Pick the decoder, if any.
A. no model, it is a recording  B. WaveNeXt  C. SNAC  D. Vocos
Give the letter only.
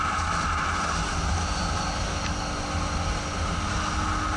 A